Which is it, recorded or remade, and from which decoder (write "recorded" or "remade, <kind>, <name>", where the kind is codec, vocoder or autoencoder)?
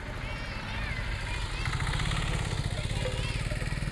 recorded